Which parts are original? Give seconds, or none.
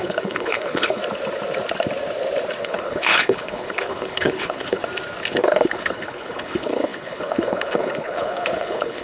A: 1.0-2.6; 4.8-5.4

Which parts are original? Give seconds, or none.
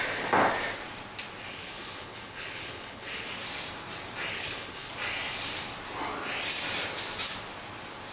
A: 0.0-1.5; 3.3-4.3; 4.9-8.1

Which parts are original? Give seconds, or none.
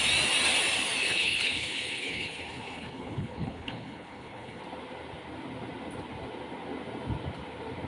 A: 0.0-1.0; 4.6-7.9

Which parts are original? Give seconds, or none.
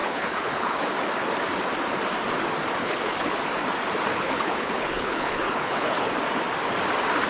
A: 0.8-2.8; 3.4-4.1; 6.1-7.3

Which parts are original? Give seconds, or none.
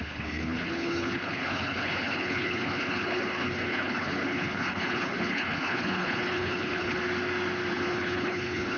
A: 7.0-7.7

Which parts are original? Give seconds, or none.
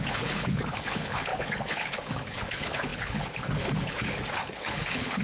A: none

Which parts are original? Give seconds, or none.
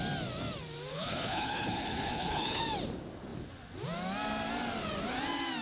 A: 0.0-0.9; 2.6-5.6